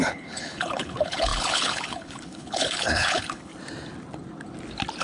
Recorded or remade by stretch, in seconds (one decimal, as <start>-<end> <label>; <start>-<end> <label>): 0.0-3.5 remade; 3.5-5.0 recorded